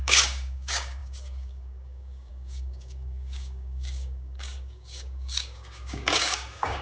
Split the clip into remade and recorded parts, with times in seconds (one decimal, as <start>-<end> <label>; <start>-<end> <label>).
0.0-6.8 remade